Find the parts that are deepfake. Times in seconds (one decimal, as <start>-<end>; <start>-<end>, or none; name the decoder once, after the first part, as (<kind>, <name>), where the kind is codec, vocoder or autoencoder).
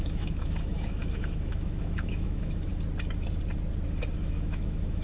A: 0.0-2.7 (autoencoder, DAC-VAE); 4.2-5.0